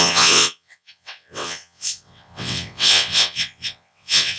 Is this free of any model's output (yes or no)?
no